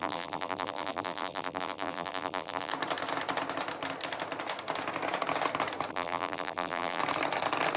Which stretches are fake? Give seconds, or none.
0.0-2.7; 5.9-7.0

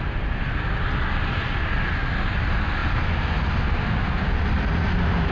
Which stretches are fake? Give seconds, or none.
none

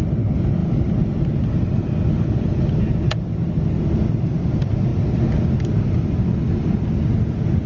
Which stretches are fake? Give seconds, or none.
none

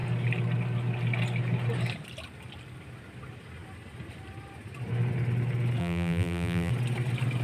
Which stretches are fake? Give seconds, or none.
5.8-6.7

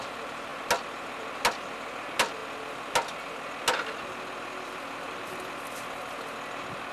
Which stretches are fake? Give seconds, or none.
none

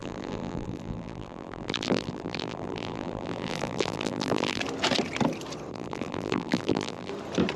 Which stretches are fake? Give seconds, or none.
0.0-4.6; 5.7-7.1

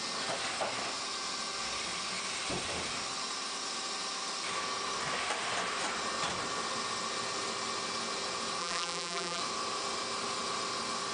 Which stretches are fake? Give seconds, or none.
8.6-9.4